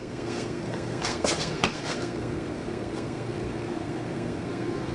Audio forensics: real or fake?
fake